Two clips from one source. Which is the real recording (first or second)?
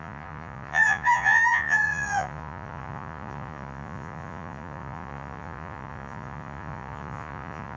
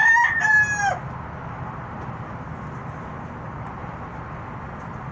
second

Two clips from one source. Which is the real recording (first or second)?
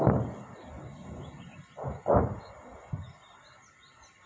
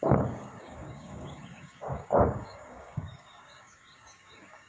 first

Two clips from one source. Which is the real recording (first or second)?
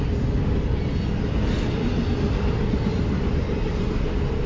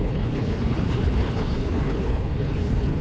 first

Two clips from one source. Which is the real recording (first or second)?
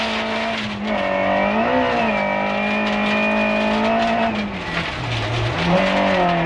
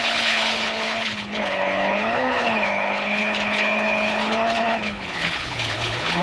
first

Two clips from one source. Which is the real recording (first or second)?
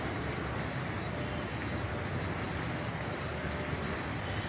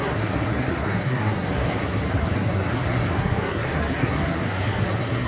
first